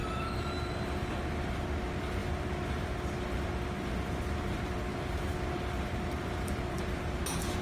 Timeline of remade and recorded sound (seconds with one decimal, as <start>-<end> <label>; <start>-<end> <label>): 0.0-7.6 recorded